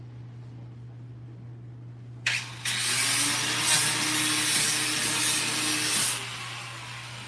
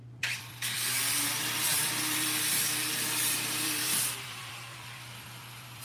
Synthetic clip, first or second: second